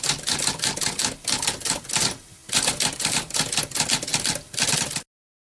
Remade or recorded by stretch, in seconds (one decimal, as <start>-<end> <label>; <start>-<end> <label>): 0.0-1.0 recorded; 1.0-1.8 remade; 1.8-4.1 recorded; 4.1-5.0 remade; 5.0-5.5 recorded